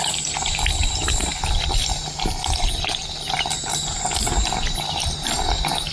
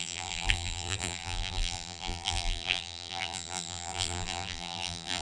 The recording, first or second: first